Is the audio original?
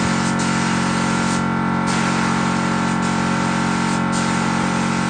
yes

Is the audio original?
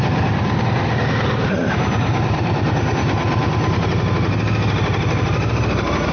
yes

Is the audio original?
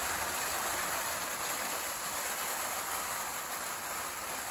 yes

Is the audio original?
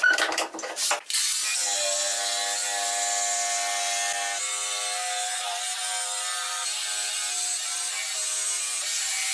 yes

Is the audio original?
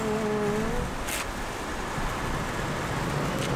yes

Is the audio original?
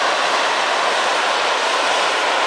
yes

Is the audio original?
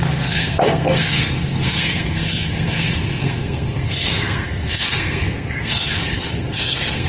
no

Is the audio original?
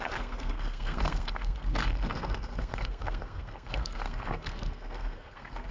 no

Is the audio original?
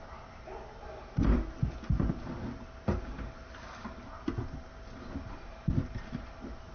yes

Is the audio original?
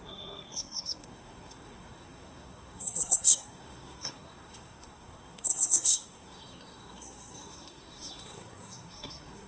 no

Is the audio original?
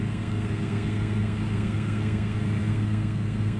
no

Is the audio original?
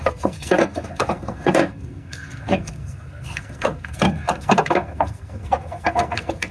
no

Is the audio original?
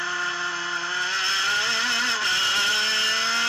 yes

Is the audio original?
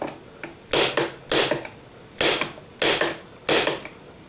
yes